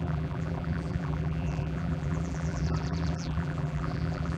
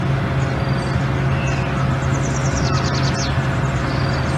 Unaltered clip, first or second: second